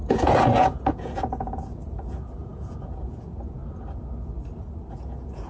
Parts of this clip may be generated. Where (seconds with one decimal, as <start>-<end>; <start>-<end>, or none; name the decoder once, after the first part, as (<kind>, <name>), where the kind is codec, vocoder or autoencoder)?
0.0-3.6 (vocoder, Vocos); 4.9-5.5